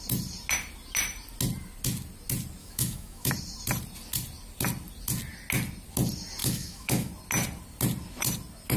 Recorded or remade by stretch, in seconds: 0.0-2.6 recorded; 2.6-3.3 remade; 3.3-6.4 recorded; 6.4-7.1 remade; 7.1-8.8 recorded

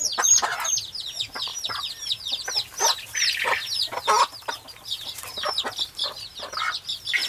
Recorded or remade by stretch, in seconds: 0.0-7.3 recorded